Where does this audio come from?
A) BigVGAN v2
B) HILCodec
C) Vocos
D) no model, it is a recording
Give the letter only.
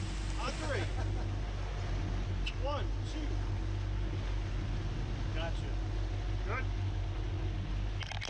D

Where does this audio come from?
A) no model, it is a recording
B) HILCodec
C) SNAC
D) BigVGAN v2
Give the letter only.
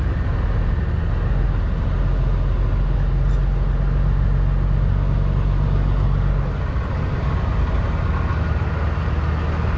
A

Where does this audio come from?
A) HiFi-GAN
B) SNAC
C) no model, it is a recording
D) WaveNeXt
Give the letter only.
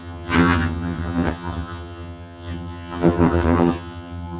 A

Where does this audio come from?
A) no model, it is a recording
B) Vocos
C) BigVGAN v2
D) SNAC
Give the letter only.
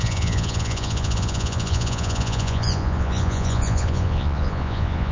B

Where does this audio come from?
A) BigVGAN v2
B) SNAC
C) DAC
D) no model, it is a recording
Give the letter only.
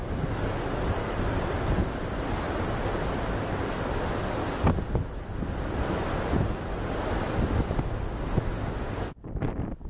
D